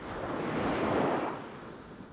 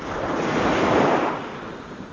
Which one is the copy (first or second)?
second